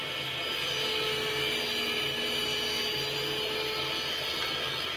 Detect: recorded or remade recorded